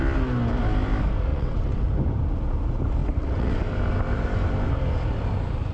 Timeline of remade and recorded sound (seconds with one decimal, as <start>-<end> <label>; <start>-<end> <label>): 0.0-1.3 recorded; 1.3-1.9 remade; 1.9-3.0 recorded; 3.0-3.6 remade; 3.6-5.7 recorded